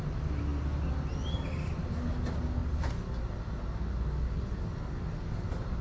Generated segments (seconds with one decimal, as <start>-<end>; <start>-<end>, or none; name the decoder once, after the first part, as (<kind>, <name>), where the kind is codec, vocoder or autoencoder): none